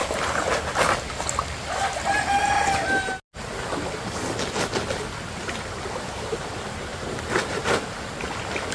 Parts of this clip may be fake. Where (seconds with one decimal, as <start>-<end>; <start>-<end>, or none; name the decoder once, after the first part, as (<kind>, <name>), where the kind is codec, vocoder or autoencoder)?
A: 6.9-7.8 (vocoder, BigVGAN v2)